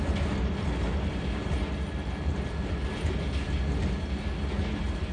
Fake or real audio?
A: real